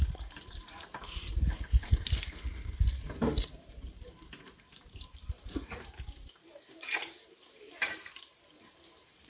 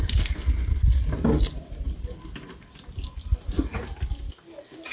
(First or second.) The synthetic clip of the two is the first